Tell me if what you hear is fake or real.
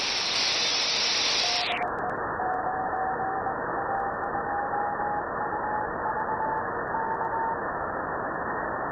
real